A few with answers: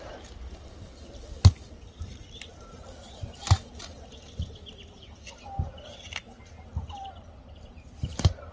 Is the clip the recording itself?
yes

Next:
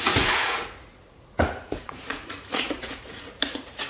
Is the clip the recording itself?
no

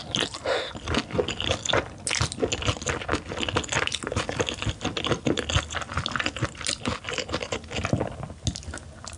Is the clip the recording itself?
yes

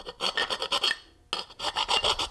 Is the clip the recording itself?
yes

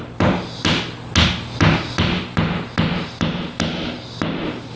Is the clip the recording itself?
yes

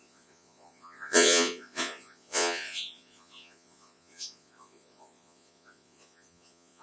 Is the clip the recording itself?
no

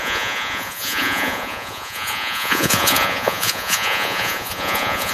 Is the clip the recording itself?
no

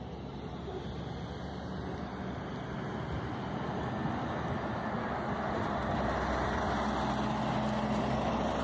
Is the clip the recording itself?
yes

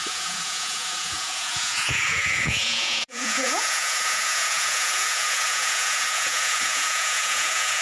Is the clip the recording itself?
no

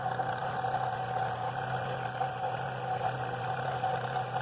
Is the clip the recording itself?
yes